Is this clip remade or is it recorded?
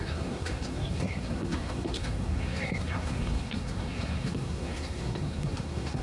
remade